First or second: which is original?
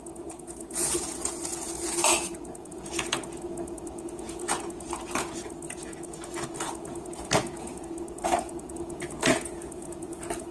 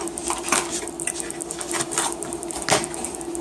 second